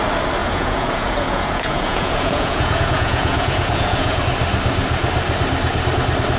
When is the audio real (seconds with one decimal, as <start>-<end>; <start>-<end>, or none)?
0.0-0.4; 4.2-6.4